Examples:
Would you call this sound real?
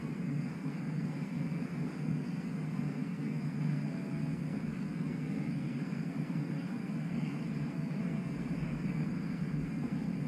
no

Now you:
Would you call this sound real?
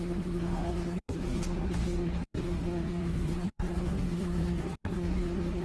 no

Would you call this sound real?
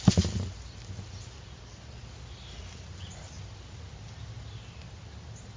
yes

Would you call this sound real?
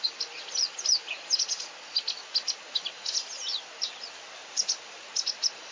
yes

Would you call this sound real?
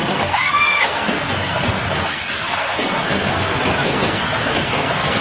no